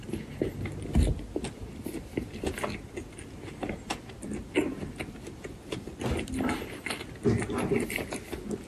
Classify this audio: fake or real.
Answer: real